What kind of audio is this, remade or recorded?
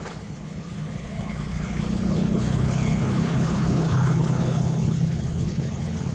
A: remade